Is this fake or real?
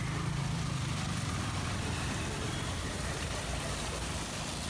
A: real